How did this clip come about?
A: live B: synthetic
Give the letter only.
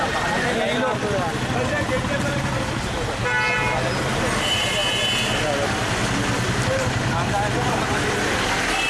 A